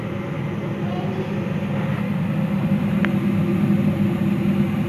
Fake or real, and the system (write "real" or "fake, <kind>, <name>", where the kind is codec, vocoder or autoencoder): real